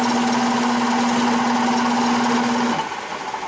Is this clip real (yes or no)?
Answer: yes